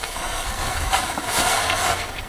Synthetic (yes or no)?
yes